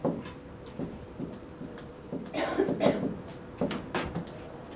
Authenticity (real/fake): real